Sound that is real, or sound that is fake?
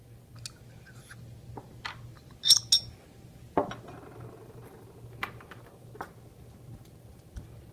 real